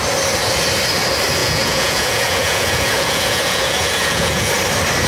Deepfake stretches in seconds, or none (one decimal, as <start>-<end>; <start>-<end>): 1.4-4.5